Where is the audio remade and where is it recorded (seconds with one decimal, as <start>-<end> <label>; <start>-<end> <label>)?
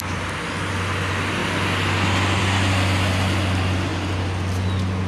0.0-5.1 recorded